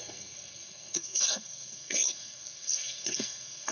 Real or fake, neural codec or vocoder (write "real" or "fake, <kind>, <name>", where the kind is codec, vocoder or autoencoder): fake, codec, SNAC